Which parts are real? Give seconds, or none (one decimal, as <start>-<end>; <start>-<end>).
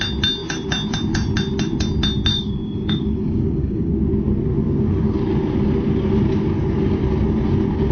0.0-2.3; 3.9-7.9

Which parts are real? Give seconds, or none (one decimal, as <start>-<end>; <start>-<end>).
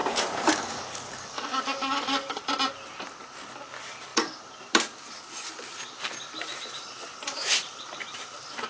2.4-8.7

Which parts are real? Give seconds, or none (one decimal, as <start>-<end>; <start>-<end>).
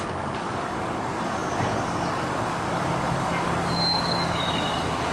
none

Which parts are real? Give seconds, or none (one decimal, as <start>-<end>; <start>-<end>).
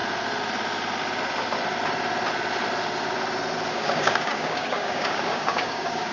0.0-3.7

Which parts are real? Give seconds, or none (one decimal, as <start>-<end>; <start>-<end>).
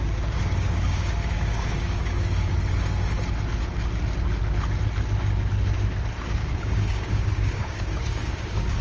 2.5-6.3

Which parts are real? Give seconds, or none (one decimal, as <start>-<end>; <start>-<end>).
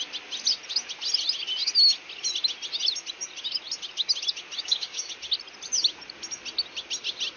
0.0-4.6; 5.1-7.4